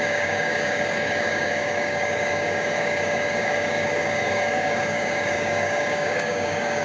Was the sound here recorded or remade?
remade